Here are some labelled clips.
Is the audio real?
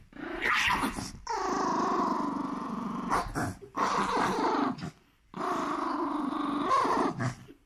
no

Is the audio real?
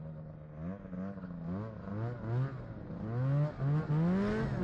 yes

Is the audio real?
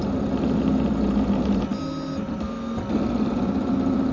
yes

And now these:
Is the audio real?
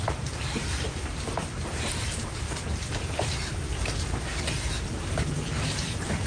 no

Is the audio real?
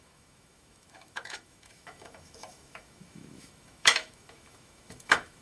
no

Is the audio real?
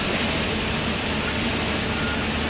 yes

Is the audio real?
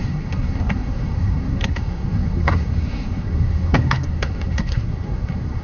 no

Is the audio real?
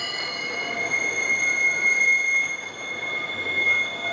yes